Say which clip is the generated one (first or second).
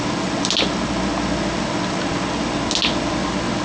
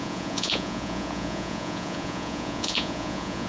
second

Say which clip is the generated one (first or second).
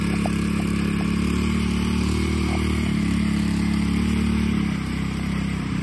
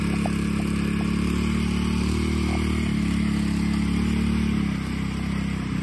first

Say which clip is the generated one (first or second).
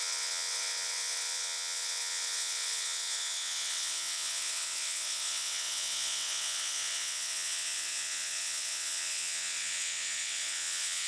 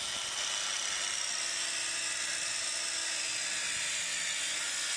first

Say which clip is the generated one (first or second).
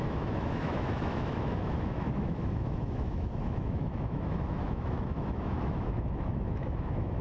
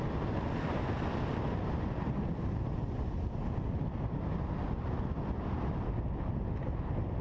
first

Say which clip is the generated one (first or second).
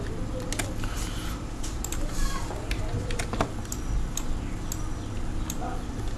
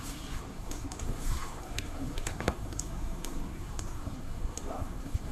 second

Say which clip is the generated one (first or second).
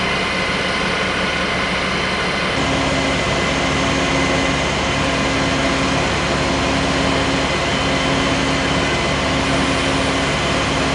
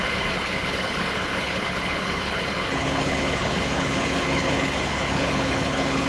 second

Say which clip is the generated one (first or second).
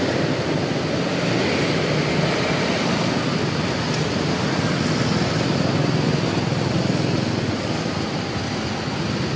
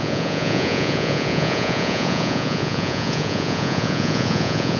second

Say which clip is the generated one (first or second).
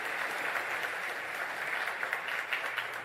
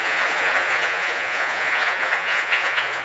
second